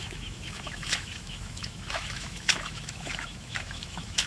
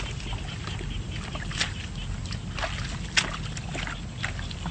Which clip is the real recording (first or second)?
second